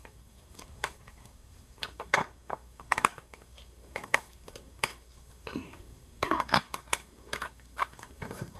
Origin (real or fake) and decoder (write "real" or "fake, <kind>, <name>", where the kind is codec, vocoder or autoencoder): fake, codec, SNAC